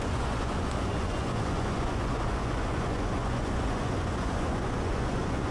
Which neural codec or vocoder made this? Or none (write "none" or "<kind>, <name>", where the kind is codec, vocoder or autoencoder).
vocoder, Vocos